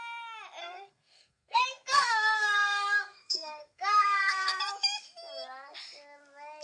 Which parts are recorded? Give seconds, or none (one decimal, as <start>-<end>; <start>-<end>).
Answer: 0.0-0.6; 4.6-6.6